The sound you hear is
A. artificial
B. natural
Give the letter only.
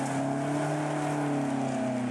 B